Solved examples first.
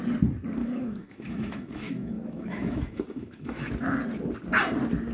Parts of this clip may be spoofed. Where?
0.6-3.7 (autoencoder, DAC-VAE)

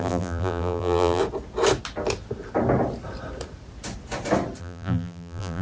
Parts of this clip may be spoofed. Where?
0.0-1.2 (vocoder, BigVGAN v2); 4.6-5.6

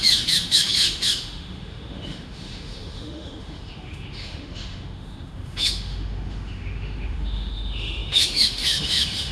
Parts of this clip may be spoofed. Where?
0.0-9.3 (autoencoder, DAC-VAE)